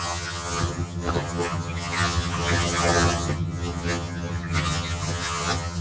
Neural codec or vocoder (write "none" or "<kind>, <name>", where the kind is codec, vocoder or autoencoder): vocoder, HiFi-GAN